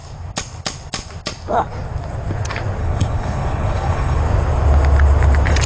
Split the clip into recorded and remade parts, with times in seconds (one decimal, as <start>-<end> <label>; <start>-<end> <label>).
0.0-2.8 recorded; 2.8-4.2 remade; 4.2-5.7 recorded